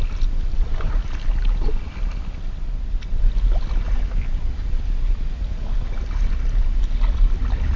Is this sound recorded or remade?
recorded